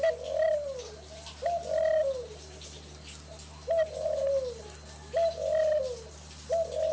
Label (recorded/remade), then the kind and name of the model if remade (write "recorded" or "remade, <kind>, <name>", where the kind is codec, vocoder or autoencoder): recorded